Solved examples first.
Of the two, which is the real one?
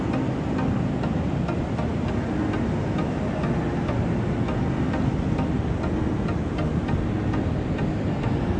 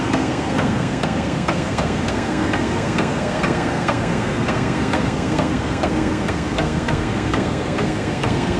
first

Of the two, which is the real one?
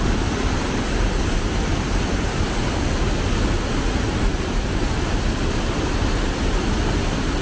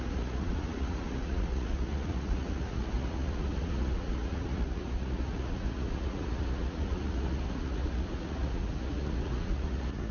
first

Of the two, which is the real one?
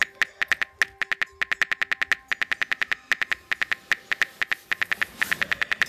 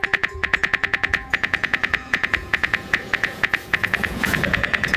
first